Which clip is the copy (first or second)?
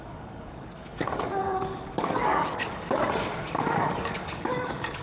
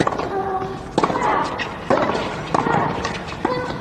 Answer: first